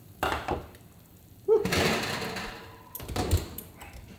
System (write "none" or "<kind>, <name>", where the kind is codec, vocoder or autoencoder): none